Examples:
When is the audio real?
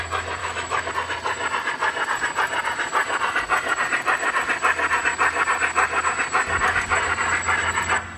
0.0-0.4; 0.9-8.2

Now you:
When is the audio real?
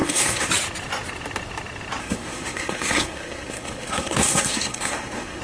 0.5-2.0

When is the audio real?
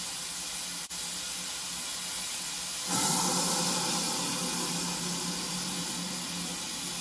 0.0-7.0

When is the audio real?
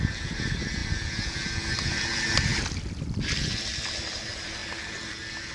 none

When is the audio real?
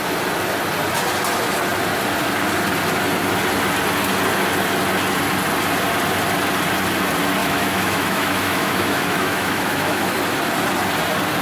0.0-7.4; 10.2-11.4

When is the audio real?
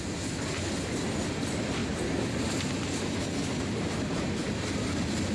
0.0-5.3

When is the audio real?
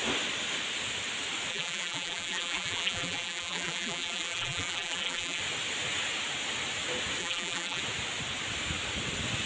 0.0-1.5; 5.4-7.2; 7.8-9.5